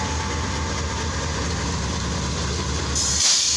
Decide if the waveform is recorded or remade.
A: recorded